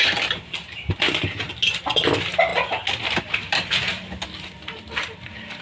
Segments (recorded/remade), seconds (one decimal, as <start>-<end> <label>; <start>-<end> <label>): 0.0-5.6 recorded